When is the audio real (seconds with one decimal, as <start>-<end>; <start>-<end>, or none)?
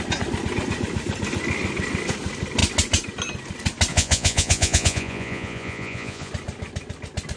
0.0-3.9; 6.3-7.4